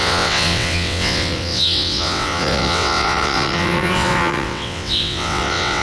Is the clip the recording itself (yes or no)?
no